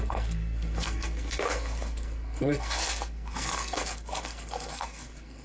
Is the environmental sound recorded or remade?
remade